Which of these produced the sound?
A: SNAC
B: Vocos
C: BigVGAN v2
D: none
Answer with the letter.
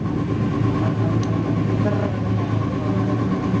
D